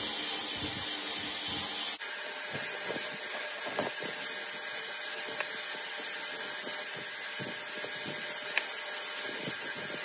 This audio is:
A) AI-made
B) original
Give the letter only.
B